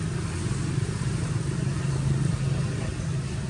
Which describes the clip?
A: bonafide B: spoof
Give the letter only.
A